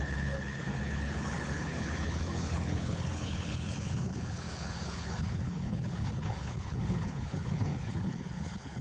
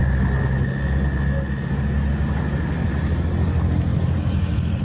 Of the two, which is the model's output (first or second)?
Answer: first